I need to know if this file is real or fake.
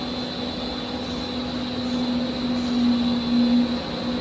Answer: real